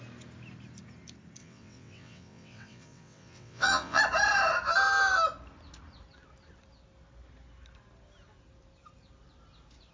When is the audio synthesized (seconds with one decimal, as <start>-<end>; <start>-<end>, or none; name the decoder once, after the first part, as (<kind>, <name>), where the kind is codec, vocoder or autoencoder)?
1.4-4.0 (vocoder, WaveNeXt)